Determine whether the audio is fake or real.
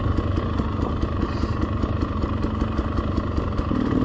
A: real